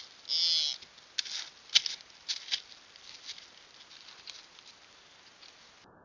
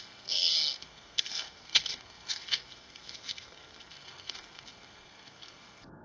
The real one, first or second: first